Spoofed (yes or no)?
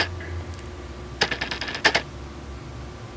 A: no